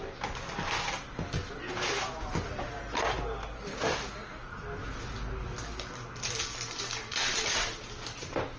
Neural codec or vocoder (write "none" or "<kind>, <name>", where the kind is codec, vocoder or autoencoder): none